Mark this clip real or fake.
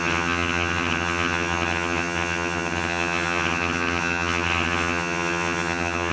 fake